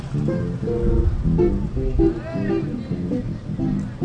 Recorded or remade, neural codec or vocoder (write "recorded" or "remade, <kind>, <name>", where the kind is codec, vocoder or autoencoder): recorded